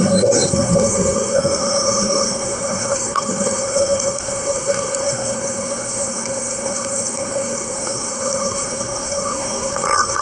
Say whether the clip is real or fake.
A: fake